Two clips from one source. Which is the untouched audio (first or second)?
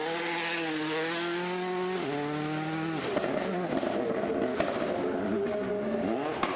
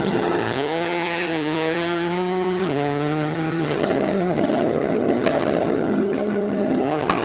first